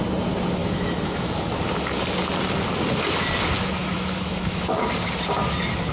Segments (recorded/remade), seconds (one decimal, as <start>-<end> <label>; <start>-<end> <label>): 0.0-0.6 recorded; 0.6-1.3 remade; 1.3-3.8 recorded; 3.8-4.8 remade; 4.8-5.9 recorded